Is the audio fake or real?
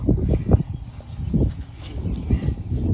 real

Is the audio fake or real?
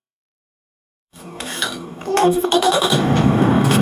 fake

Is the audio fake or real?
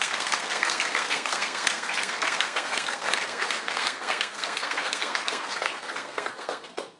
fake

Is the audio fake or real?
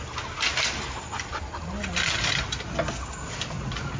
real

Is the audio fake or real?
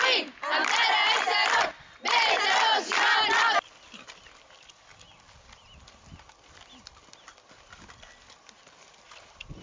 real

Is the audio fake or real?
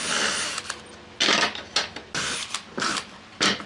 real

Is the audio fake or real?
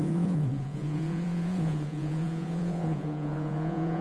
fake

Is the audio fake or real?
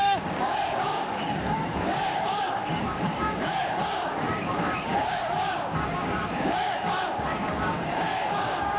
fake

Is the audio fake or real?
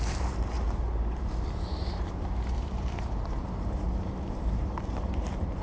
fake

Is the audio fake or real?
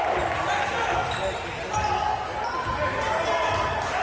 real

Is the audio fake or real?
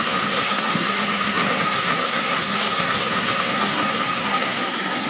fake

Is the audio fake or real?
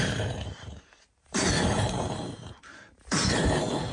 fake